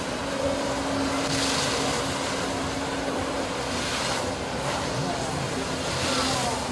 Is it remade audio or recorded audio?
recorded